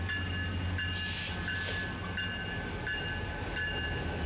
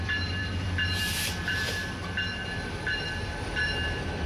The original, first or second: first